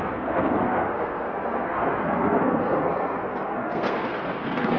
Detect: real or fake fake